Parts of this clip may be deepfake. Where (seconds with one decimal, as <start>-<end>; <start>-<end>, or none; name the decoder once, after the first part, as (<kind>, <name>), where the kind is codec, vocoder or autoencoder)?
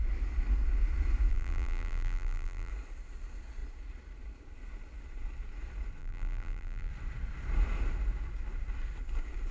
1.3-2.7 (vocoder, BigVGAN v2); 6.0-6.9